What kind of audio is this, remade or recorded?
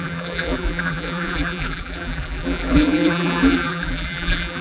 remade